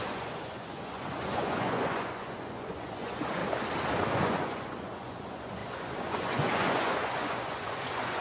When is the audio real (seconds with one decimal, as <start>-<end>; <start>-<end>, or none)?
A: 3.4-4.1